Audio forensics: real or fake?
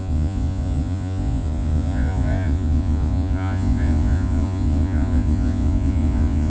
fake